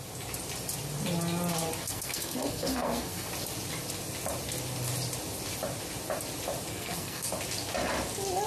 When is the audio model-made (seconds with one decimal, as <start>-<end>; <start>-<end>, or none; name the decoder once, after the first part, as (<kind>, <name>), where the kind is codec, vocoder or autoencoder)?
1.8-3.3 (codec, SNAC); 6.7-7.3